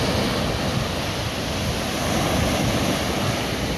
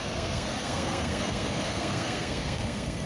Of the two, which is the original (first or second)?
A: first